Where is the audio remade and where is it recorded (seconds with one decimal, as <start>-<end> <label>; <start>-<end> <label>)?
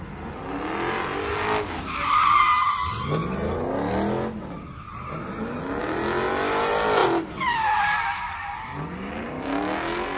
0.0-10.2 recorded